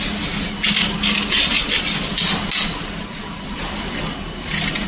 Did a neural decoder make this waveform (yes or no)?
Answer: no